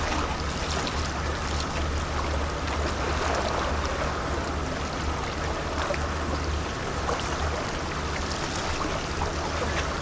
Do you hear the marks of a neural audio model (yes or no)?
no